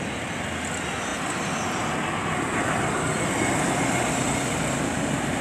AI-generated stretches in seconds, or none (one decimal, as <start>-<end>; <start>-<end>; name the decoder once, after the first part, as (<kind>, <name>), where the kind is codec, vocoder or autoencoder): none